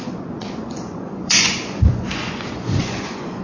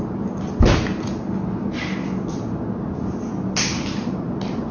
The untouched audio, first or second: second